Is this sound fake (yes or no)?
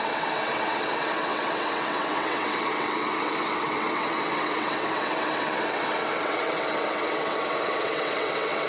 yes